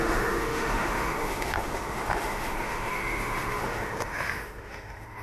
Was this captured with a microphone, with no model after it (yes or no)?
no